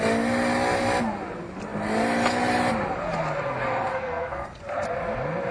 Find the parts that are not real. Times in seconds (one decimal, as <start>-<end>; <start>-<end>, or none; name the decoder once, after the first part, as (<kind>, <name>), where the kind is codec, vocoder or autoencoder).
3.9-4.6 (codec, SNAC)